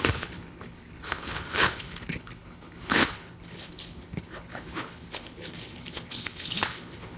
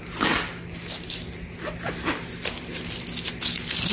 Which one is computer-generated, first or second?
first